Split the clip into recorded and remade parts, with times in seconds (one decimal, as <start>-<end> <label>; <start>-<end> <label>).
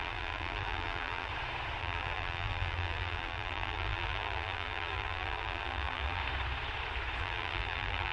0.0-1.3 remade; 1.3-1.8 recorded; 1.8-6.2 remade; 6.2-7.2 recorded; 7.2-8.1 remade